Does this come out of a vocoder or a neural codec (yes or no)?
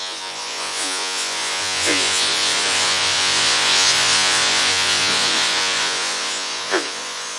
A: yes